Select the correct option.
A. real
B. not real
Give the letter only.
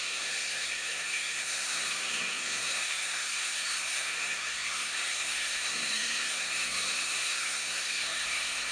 B